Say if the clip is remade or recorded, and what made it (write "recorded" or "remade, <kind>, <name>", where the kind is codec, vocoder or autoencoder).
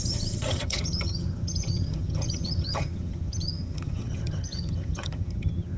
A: remade, vocoder, HiFi-GAN